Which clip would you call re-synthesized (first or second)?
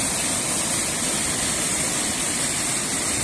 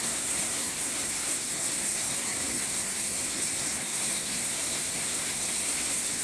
second